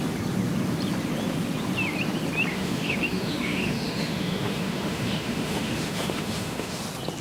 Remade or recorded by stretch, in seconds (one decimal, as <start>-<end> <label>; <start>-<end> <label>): 0.0-2.5 recorded; 2.5-6.8 remade; 6.8-7.2 recorded